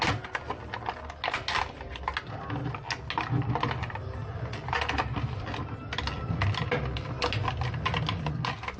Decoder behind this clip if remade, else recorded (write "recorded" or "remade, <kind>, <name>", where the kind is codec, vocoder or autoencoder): recorded